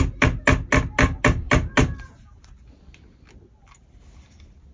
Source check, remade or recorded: recorded